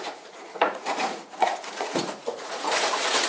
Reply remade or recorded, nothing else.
remade